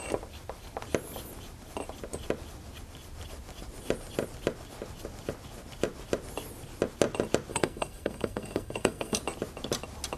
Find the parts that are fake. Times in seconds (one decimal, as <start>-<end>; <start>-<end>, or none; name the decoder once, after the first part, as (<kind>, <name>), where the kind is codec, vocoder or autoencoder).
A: 7.5-9.2 (codec, SNAC)